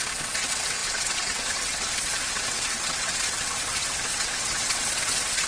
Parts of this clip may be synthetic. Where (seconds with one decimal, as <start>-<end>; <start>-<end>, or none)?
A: 0.0-5.5